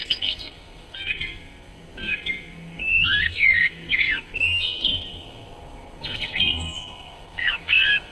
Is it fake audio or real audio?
fake